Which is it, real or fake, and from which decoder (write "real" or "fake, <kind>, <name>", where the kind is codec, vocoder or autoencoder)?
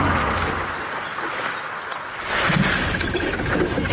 real